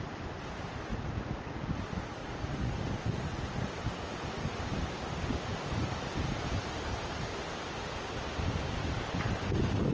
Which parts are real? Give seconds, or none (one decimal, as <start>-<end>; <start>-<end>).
0.0-0.9; 1.7-2.2; 3.7-9.9